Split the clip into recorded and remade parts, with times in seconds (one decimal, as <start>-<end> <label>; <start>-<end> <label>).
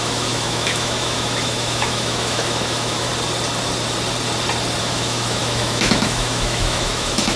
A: 0.0-3.1 remade; 3.1-4.8 recorded; 4.8-7.4 remade